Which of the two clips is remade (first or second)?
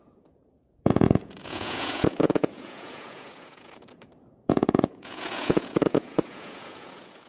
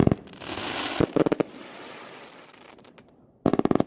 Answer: first